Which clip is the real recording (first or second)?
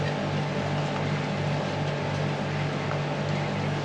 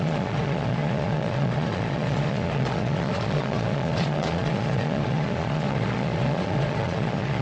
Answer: first